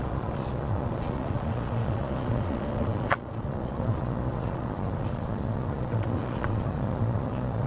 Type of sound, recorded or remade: remade